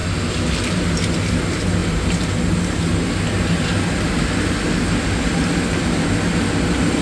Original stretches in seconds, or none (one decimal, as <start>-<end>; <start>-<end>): 0.0-7.0

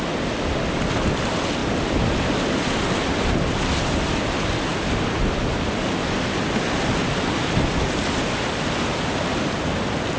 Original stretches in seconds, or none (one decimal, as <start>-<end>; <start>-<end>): 0.0-1.6; 3.3-10.2

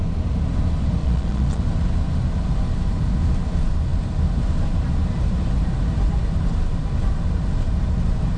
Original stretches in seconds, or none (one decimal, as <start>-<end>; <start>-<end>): 0.0-1.0; 1.6-8.4

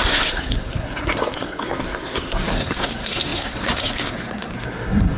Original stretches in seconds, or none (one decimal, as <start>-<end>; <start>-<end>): none

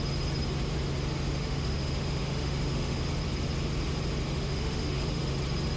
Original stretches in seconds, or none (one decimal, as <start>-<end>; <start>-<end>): 0.0-1.3; 3.0-4.3; 5.2-5.8

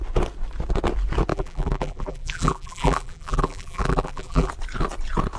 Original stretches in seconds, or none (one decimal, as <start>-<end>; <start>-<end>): 0.0-1.3; 4.5-5.4